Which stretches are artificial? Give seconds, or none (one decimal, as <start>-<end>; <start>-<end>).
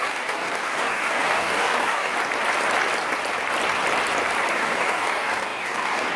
0.0-2.1; 4.5-6.2